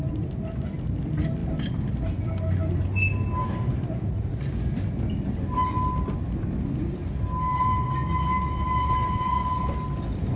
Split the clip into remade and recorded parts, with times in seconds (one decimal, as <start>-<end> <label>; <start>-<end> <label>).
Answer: 0.0-10.4 recorded